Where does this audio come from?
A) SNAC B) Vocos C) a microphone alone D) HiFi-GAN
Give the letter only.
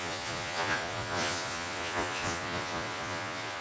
B